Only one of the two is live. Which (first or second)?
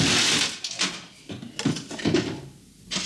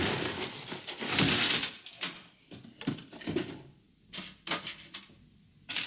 first